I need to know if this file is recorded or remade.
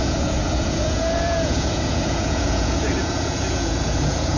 remade